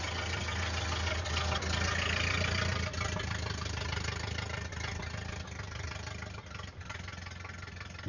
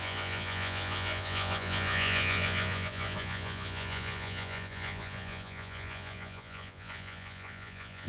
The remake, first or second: second